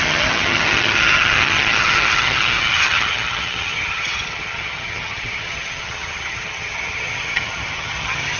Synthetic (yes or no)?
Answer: yes